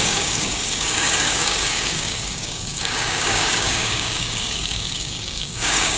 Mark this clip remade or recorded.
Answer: remade